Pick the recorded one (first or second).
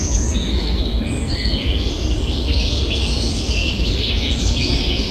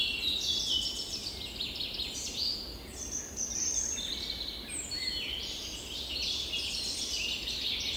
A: second